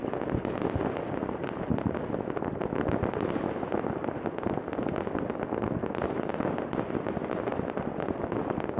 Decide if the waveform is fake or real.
real